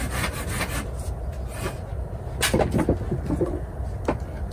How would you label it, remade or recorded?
recorded